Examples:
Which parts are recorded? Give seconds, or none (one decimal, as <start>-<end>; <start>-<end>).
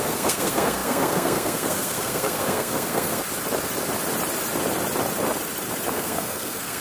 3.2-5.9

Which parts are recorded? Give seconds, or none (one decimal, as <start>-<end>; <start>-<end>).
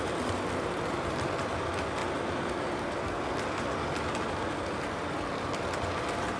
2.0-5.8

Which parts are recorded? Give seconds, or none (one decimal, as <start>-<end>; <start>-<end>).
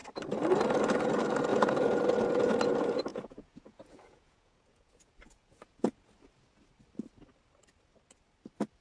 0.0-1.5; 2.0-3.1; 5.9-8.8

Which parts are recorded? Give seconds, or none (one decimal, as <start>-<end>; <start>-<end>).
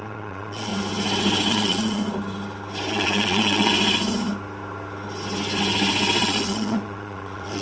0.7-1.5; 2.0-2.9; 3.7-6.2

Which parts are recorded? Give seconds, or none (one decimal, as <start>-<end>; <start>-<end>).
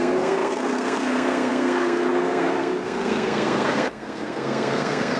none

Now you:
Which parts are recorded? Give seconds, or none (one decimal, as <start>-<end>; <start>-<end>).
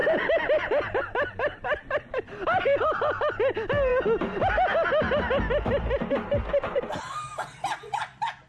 0.0-8.5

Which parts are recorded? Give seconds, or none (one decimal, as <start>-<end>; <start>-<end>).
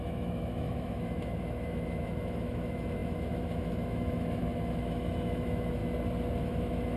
5.8-6.4